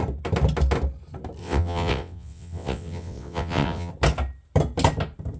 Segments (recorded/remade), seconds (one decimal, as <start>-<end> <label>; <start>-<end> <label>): 0.0-1.4 recorded; 1.4-3.9 remade; 3.9-5.4 recorded